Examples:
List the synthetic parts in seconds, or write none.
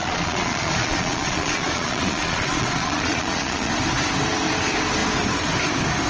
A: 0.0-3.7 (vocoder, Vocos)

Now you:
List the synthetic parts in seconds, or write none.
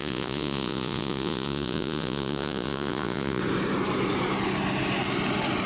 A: 0.0-3.4 (vocoder, Vocos)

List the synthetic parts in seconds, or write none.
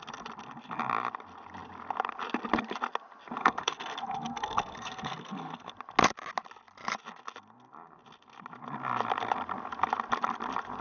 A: 3.4-5.7 (codec, SNAC)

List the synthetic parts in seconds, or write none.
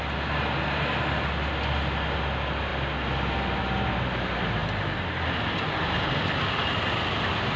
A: none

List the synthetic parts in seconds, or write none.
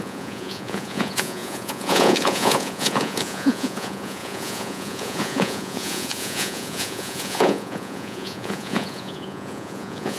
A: 0.0-10.2 (vocoder, Vocos)